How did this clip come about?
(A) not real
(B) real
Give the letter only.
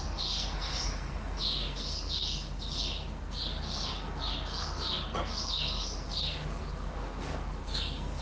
A